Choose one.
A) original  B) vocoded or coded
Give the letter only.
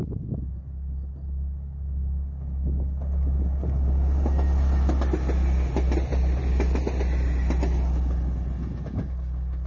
A